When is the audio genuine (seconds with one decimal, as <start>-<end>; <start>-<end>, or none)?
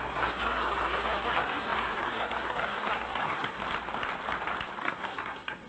3.6-4.8